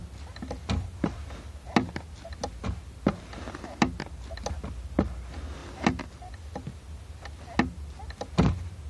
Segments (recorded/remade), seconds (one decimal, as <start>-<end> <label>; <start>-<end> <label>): 0.0-8.9 recorded